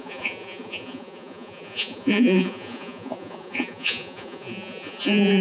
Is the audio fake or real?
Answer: fake